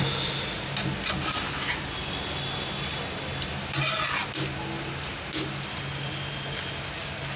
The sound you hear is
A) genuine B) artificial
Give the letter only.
A